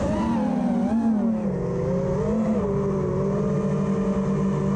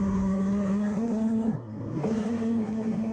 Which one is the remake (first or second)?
second